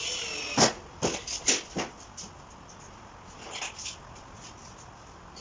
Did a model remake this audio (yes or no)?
no